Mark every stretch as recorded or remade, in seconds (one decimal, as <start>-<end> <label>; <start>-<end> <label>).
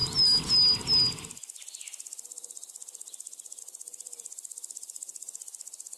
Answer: 0.0-6.0 recorded